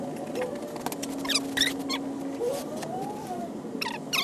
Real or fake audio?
real